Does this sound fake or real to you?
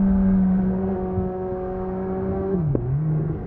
fake